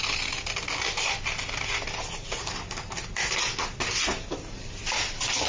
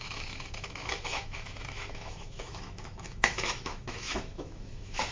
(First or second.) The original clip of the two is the first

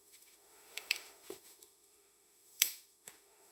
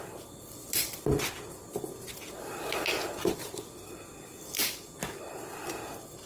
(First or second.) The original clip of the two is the second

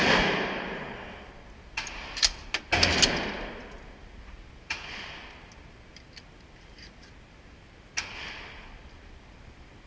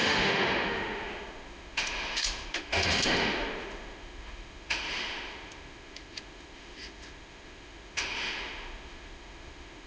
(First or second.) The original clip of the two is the first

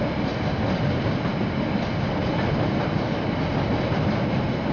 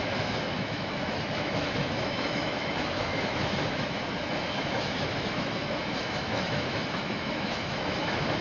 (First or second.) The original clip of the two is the first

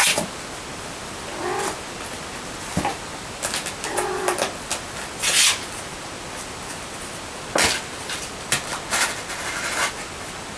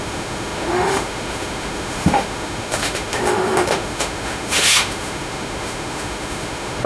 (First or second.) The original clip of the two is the first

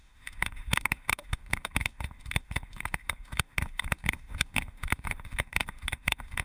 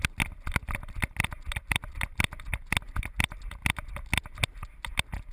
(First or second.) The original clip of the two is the second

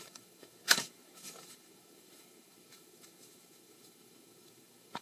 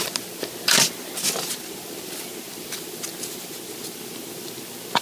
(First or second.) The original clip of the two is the second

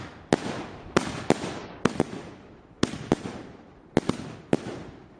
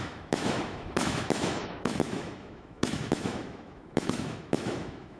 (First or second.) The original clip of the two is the first